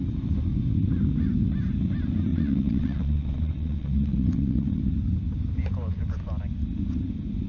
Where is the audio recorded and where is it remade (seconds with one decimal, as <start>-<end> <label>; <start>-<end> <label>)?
0.0-2.3 recorded; 2.3-4.8 remade; 4.8-7.5 recorded